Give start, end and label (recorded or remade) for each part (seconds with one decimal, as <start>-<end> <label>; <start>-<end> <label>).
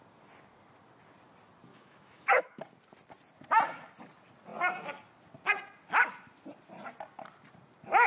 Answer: 0.0-1.7 recorded; 1.7-2.6 remade; 2.6-8.1 recorded